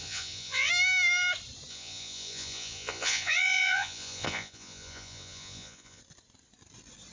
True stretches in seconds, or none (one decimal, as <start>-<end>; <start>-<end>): 0.7-1.7; 6.0-7.1